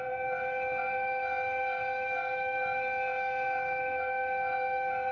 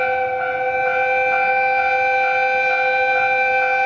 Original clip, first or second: second